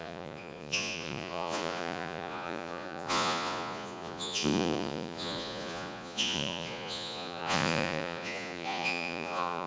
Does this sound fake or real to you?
fake